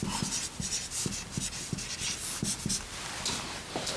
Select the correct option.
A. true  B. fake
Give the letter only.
A